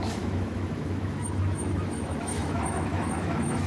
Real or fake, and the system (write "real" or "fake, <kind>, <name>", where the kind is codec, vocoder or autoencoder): fake, autoencoder, DAC-VAE